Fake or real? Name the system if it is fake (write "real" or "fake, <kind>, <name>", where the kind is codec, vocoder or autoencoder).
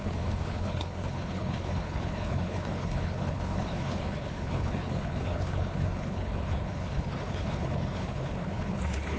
fake, codec, HILCodec